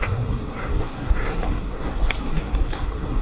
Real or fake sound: fake